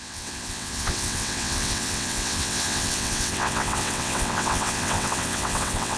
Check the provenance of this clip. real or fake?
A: fake